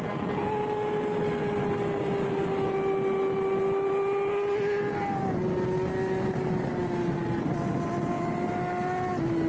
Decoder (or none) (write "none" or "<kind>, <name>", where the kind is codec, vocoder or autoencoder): none